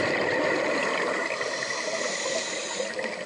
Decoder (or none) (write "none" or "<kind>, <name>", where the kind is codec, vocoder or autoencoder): none